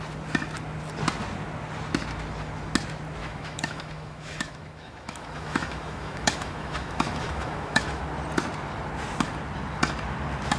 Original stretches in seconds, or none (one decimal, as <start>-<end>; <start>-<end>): 0.0-3.2; 8.0-10.6